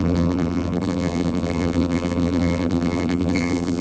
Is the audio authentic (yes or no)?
no